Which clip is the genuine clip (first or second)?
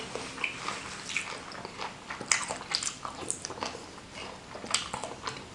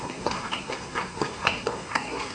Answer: first